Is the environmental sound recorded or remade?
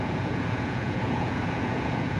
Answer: remade